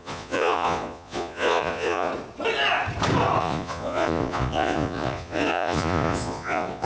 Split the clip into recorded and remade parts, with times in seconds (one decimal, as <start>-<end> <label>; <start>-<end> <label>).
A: 0.0-2.1 remade; 2.1-3.4 recorded; 3.4-6.9 remade